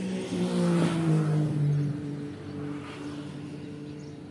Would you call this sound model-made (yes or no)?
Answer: no